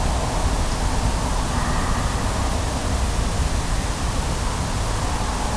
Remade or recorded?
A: recorded